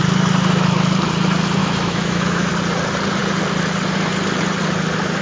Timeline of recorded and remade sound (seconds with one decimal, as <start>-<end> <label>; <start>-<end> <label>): 0.0-1.6 recorded; 1.6-2.5 remade; 2.5-5.2 recorded